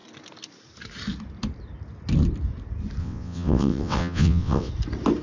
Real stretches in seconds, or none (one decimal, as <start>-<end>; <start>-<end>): 0.0-3.0; 4.7-5.2